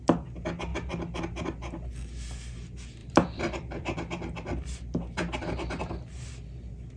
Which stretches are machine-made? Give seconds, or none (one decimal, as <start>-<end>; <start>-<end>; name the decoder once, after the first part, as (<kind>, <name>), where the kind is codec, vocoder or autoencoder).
3.0-5.8 (vocoder, BigVGAN v2)